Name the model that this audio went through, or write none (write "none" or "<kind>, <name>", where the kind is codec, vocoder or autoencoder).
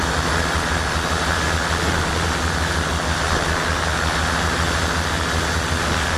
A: none